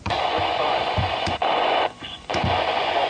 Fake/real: fake